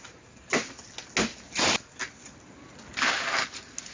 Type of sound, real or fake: real